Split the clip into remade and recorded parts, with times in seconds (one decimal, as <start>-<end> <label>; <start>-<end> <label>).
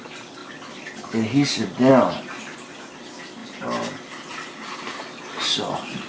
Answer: 0.0-6.1 recorded